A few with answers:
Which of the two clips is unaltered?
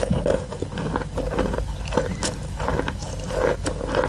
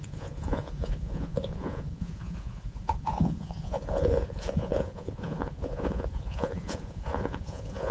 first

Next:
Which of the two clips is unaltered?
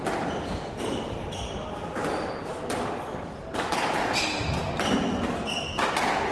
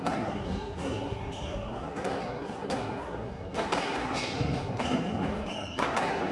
first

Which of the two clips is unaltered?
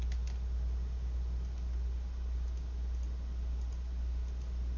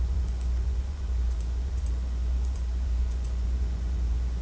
first